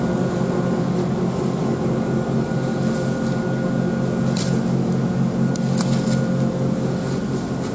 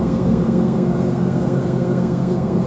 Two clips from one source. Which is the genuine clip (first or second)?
first